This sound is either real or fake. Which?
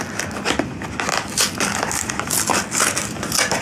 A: real